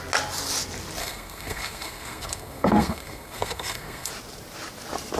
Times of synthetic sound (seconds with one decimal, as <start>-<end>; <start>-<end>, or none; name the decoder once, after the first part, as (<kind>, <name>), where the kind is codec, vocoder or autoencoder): 1.0-4.1 (codec, SNAC)